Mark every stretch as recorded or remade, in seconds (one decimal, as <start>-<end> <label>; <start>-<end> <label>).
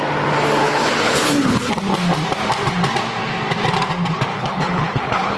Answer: 0.0-0.6 recorded; 0.6-1.7 remade; 1.7-4.3 recorded; 4.3-5.4 remade